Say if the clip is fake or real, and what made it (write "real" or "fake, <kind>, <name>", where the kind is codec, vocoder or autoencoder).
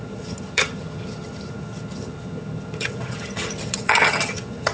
fake, vocoder, HiFi-GAN